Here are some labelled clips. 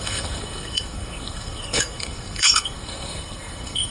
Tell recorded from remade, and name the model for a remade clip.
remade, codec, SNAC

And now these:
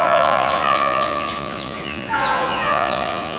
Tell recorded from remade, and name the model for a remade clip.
remade, vocoder, Vocos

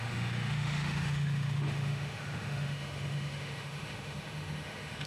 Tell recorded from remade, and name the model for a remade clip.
remade, autoencoder, DAC-VAE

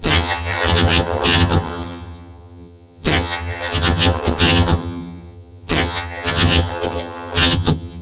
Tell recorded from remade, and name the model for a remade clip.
remade, vocoder, HiFi-GAN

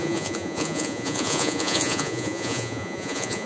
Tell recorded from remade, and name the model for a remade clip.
remade, vocoder, Vocos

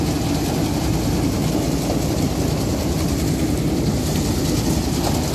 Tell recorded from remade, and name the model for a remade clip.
recorded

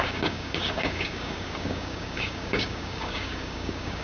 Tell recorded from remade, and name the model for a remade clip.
remade, codec, DAC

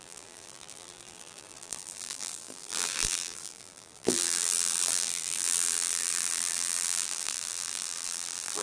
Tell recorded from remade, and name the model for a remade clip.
remade, vocoder, BigVGAN v2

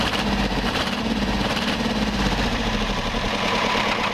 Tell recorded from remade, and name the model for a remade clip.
remade, vocoder, BigVGAN v2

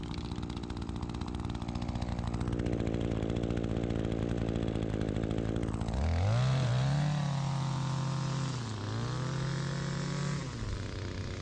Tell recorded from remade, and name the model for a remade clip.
recorded